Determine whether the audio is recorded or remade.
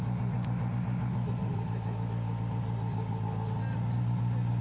recorded